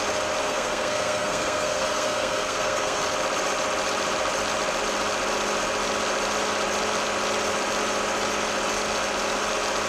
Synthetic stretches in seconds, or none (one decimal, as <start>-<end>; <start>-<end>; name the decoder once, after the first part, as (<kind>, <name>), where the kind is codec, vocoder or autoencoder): 0.4-3.0 (codec, SNAC)